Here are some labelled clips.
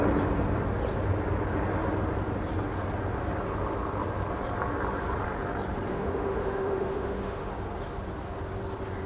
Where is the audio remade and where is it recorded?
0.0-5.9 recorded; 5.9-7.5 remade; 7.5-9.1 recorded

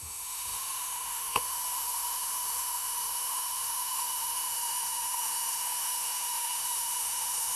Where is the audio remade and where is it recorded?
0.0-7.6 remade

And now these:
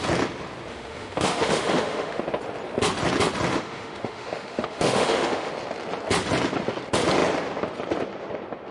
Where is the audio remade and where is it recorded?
0.0-0.7 recorded; 0.7-2.2 remade; 2.2-3.5 recorded; 3.5-5.5 remade; 5.5-8.7 recorded